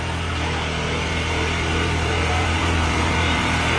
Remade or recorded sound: remade